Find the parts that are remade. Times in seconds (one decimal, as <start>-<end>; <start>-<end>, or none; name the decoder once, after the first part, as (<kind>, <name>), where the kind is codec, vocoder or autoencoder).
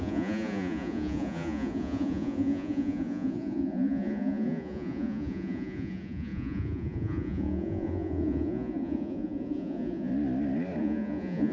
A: 0.0-10.1 (vocoder, Vocos); 10.8-11.5